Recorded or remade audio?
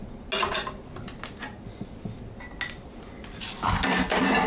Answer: recorded